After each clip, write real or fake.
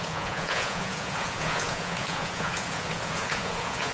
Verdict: fake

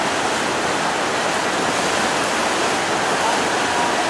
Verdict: real